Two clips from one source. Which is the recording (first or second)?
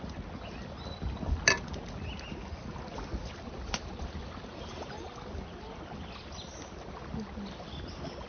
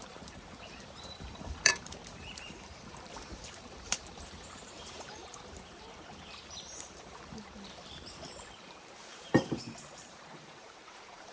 first